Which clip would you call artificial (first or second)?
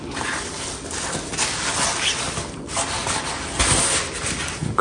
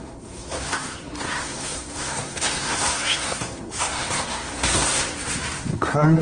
second